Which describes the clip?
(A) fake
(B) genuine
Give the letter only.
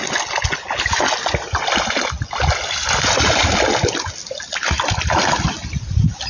B